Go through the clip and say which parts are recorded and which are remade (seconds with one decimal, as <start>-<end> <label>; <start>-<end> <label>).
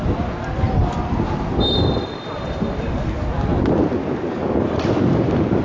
0.0-5.6 recorded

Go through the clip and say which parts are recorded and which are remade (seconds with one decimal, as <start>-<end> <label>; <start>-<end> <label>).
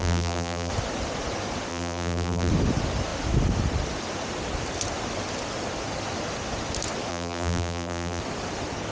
0.0-0.7 remade; 0.7-1.7 recorded; 1.7-2.5 remade; 2.5-7.1 recorded; 7.1-8.2 remade; 8.2-8.9 recorded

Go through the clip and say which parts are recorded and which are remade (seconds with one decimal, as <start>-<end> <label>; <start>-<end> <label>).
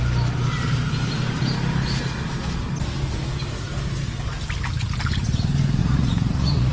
0.0-5.8 recorded; 5.8-6.7 remade